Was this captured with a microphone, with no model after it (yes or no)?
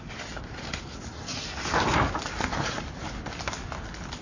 yes